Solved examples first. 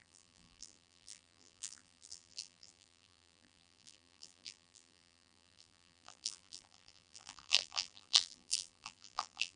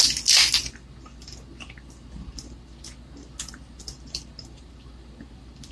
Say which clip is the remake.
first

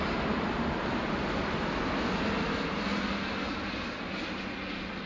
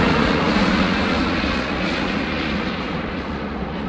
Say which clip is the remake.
second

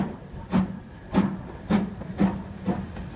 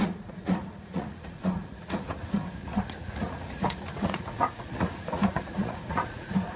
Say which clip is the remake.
second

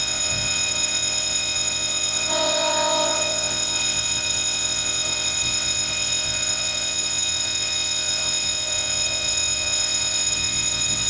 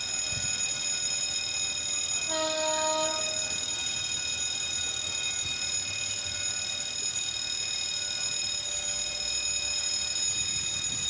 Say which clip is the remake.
first